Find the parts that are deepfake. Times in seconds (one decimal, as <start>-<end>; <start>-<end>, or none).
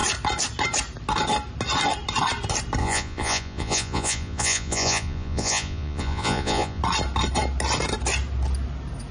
2.8-6.8